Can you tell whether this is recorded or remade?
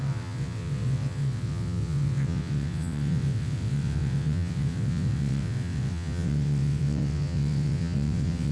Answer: remade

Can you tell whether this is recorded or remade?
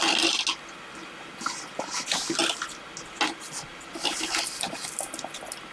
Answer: recorded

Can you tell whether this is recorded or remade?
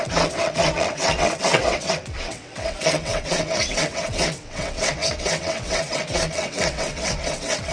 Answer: remade